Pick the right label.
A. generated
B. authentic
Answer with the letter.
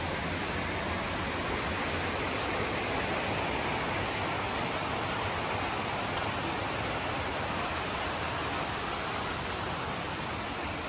B